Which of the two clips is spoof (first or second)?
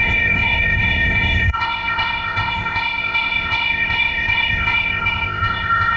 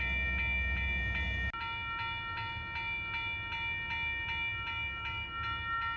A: first